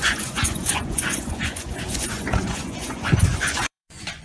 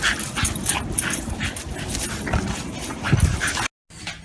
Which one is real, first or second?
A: second